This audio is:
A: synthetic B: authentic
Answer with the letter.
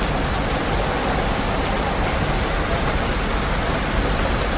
B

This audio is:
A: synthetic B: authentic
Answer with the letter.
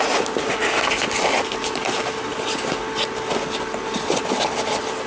B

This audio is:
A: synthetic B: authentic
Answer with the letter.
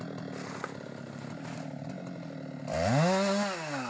B